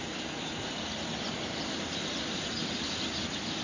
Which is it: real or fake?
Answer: fake